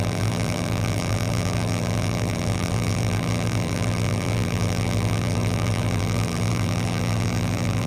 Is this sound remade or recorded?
remade